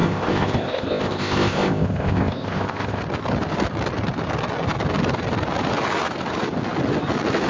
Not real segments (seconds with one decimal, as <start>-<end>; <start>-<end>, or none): 0.0-3.0